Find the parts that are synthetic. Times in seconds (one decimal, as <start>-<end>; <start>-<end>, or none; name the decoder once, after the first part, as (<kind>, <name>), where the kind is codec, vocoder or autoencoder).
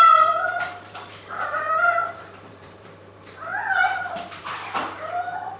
0.0-5.6 (vocoder, BigVGAN v2)